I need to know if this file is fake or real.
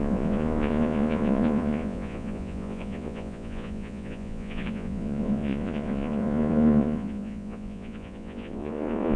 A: fake